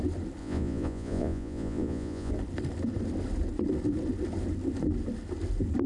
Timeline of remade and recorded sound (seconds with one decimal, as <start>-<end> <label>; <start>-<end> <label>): 0.0-0.4 recorded; 0.4-2.3 remade; 2.3-5.9 recorded